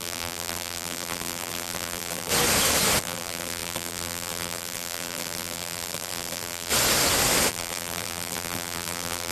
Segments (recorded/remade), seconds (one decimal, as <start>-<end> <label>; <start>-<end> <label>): 0.0-2.3 remade; 2.3-3.0 recorded; 3.0-6.7 remade; 6.7-7.5 recorded; 7.5-9.3 remade